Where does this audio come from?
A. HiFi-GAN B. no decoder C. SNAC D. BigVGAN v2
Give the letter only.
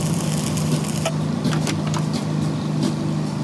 B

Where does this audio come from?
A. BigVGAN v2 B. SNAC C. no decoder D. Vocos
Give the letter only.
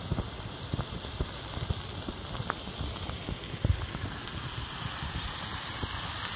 C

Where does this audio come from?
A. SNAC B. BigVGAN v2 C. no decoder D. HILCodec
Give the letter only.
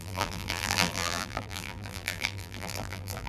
B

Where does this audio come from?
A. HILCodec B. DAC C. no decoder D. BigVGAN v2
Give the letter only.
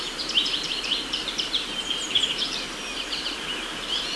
D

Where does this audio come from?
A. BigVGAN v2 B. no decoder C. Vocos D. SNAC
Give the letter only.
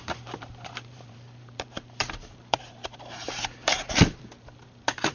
A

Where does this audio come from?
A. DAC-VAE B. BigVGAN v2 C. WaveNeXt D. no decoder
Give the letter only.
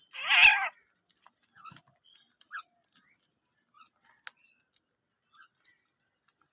D